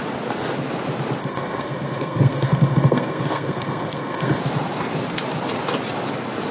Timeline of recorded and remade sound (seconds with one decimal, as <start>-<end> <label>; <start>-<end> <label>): 0.0-1.2 recorded; 1.2-4.4 remade; 4.4-6.5 recorded